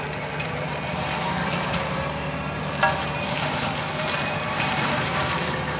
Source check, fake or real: fake